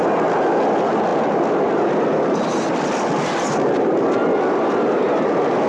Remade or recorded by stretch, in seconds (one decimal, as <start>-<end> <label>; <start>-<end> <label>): 0.0-5.7 recorded